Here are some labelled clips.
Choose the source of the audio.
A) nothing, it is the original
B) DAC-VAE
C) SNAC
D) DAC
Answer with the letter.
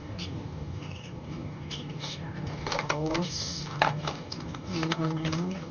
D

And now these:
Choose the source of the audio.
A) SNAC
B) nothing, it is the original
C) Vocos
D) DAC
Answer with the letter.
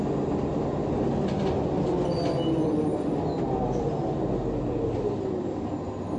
B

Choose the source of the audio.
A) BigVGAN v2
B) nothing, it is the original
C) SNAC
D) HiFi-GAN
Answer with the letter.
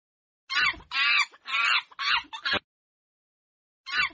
B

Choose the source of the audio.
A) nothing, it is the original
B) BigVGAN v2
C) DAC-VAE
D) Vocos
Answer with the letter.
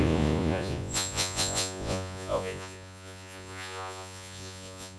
D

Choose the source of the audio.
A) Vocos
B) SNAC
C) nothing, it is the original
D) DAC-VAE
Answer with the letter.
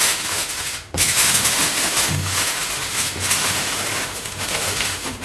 D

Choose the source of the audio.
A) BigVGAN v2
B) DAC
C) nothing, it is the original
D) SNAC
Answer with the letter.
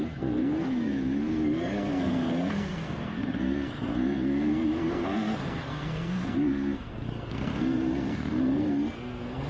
D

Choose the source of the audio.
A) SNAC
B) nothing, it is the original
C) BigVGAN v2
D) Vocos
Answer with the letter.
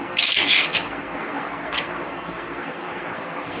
A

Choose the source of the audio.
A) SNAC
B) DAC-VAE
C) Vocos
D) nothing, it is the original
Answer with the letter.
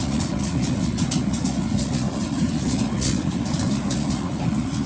C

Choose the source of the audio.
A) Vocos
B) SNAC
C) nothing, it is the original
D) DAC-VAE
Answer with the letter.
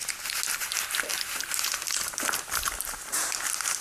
C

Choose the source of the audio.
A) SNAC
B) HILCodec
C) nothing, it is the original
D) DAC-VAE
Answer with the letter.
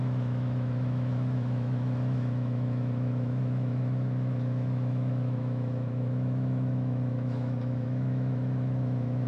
D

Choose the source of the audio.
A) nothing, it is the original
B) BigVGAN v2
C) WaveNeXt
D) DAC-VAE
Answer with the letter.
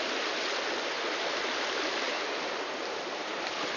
A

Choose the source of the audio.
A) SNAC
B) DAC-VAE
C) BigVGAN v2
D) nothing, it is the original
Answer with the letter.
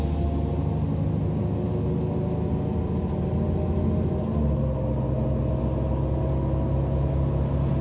D